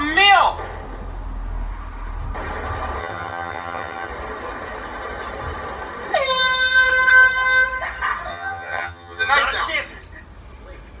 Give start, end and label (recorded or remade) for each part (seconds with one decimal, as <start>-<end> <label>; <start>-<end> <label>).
0.0-3.0 recorded; 3.0-4.1 remade; 4.1-8.3 recorded; 8.3-9.3 remade; 9.3-11.0 recorded